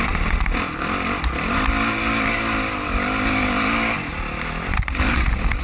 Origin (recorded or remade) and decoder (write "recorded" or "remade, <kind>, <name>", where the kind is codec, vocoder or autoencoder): recorded